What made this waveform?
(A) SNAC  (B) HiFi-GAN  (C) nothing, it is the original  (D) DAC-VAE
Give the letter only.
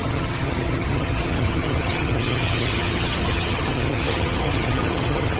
B